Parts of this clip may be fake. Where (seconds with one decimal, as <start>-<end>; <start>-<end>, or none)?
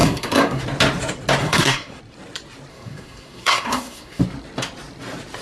0.0-0.6; 1.4-2.0; 2.7-4.2